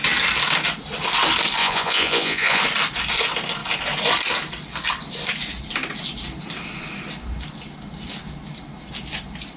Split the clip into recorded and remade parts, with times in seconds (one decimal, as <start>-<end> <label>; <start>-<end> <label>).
0.0-1.6 recorded; 1.6-2.6 remade; 2.6-9.6 recorded